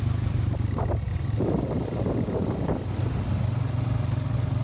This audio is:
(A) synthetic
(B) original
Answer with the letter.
B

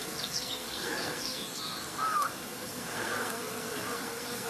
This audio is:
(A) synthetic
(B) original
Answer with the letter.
A